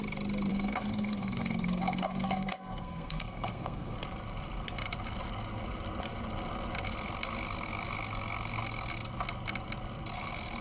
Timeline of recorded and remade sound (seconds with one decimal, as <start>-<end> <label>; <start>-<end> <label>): 0.0-0.5 recorded; 0.5-4.0 remade; 4.0-10.6 recorded